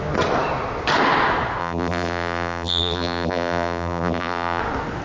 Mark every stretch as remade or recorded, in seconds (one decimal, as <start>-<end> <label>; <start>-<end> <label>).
0.0-1.6 recorded; 1.6-4.6 remade; 4.6-5.0 recorded